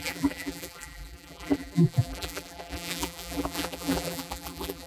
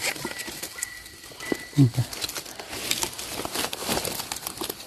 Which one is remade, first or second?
first